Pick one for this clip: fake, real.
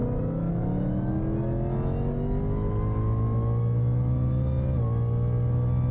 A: real